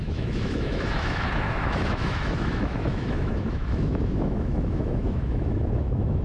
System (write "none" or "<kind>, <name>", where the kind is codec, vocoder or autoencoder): autoencoder, DAC-VAE